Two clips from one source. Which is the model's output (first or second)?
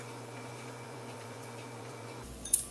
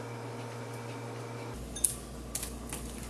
first